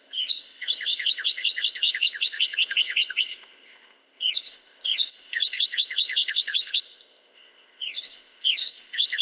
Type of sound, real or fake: fake